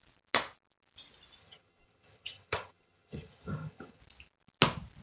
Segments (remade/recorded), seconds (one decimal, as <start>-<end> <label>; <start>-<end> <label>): 0.0-1.4 recorded; 1.4-4.0 remade; 4.0-5.0 recorded